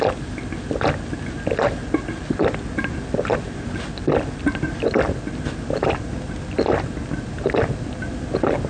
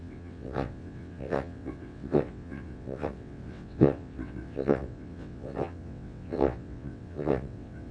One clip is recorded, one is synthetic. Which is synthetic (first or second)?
second